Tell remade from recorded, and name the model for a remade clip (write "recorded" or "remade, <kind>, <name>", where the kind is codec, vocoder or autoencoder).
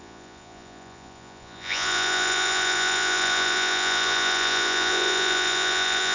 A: remade, vocoder, Vocos